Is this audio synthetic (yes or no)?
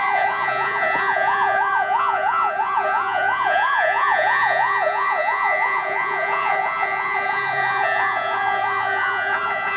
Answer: yes